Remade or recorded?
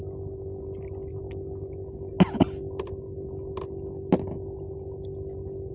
recorded